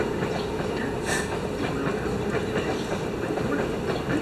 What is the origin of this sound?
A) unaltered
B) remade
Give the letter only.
A